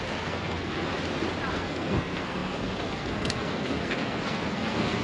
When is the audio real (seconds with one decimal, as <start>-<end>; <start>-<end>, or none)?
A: 0.9-1.5